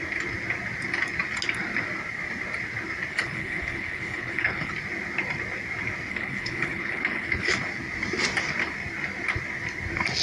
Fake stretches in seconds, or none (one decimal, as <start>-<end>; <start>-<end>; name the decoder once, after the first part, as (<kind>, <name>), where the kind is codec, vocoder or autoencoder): 3.1-4.7 (codec, HILCodec); 6.1-7.5